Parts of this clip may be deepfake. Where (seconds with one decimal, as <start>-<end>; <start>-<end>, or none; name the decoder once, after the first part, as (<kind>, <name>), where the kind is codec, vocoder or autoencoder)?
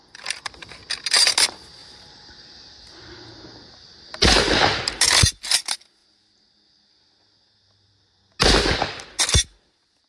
none